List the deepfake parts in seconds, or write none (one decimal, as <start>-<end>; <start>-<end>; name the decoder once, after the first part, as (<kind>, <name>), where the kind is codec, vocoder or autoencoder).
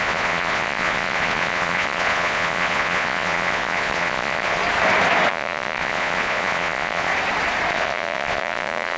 0.0-4.6 (vocoder, Vocos); 5.3-7.1; 7.7-9.0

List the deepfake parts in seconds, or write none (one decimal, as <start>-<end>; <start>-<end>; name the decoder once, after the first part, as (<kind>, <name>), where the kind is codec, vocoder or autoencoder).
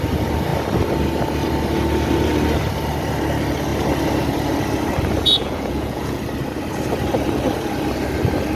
5.2-6.2 (vocoder, Vocos)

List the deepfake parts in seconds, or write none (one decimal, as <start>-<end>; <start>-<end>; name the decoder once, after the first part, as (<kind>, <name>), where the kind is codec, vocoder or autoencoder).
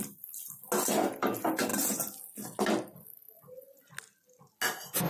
none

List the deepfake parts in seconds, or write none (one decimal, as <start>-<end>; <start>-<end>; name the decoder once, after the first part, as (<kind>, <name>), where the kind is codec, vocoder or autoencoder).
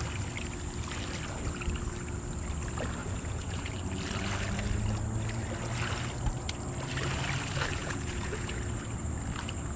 3.0-3.7 (vocoder, Vocos); 7.8-8.6